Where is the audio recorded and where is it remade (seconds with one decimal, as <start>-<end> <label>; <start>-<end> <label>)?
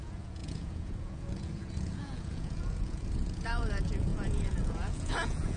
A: 0.0-5.6 remade